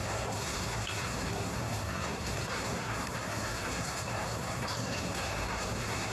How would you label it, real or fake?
fake